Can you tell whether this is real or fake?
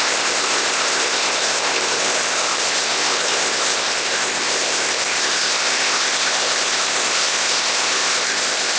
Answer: fake